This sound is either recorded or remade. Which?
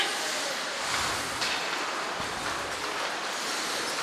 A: recorded